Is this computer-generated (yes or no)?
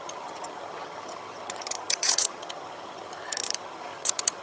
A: yes